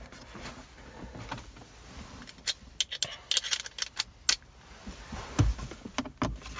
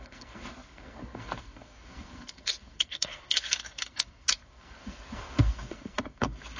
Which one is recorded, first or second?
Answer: first